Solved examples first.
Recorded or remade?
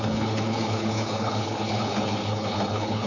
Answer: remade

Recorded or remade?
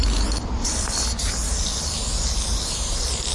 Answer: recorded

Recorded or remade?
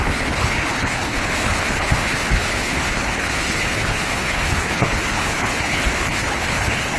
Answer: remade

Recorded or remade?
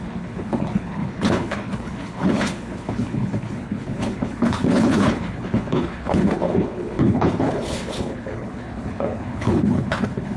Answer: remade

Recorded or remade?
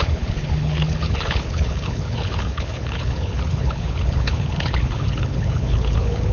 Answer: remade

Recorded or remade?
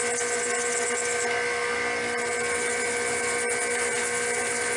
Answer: recorded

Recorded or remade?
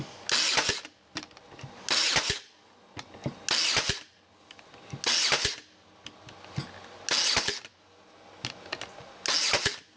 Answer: recorded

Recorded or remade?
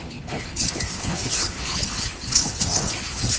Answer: remade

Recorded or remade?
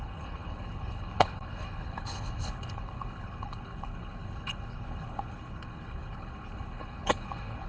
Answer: remade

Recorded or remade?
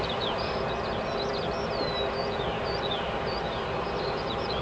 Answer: recorded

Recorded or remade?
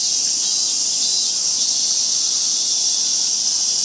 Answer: recorded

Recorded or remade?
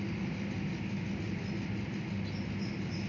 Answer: recorded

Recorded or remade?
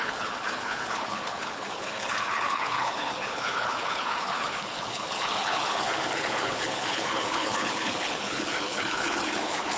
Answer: remade